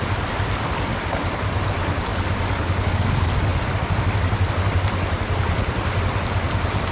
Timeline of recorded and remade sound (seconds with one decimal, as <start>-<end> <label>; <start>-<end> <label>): 0.0-2.1 recorded; 2.1-3.1 remade; 3.1-6.9 recorded